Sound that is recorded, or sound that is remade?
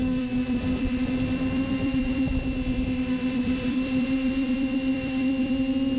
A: remade